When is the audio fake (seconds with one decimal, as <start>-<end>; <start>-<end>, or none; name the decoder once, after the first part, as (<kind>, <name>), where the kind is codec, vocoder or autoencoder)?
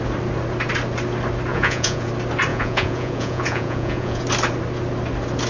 1.5-2.1 (vocoder, Vocos); 2.5-4.2